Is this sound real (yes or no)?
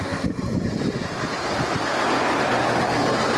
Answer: yes